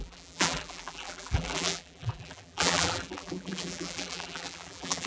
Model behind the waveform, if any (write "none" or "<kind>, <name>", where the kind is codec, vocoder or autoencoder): vocoder, BigVGAN v2